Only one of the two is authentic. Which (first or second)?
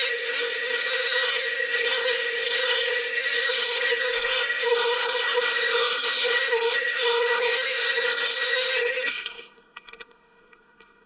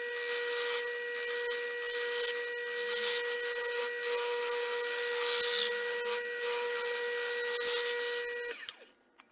second